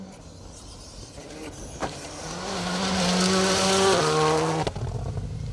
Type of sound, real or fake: real